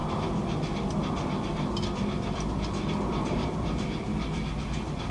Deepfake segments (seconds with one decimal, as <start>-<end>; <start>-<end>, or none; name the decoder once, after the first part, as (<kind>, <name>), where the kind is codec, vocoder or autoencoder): 3.1-4.1 (vocoder, BigVGAN v2)